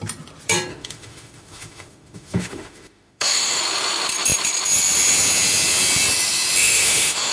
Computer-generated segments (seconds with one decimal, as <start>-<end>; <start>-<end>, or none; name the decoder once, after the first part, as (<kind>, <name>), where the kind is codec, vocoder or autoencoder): 0.7-3.6 (autoencoder, DAC-VAE); 6.6-7.3